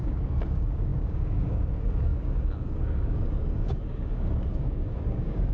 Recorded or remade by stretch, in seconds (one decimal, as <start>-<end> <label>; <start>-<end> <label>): 0.0-5.5 remade